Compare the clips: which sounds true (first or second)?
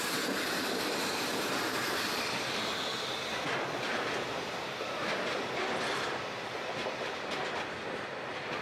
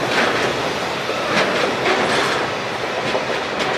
second